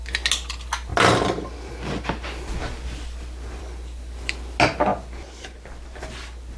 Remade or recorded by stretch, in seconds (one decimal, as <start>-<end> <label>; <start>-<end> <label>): 0.0-6.6 recorded